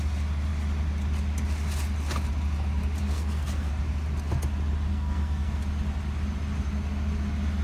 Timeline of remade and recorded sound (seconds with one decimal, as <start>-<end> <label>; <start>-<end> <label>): 0.0-3.0 recorded; 3.0-3.7 remade; 3.7-4.9 recorded; 4.9-5.6 remade; 5.6-7.6 recorded